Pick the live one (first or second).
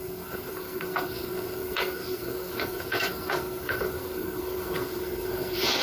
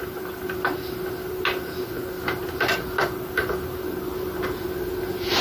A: second